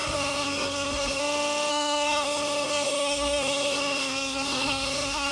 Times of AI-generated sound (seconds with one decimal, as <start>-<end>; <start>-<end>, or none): 0.0-1.2; 1.7-5.3